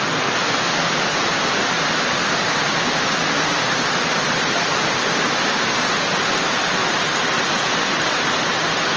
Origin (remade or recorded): recorded